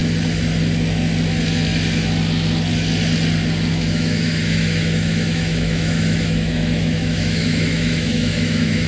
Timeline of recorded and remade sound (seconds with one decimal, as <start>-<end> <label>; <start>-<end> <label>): 0.0-3.7 recorded; 3.7-8.9 remade